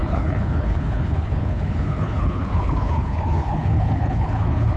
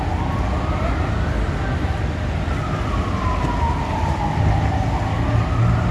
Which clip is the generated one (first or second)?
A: first